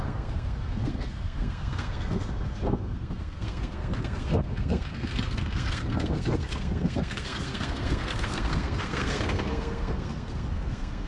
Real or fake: fake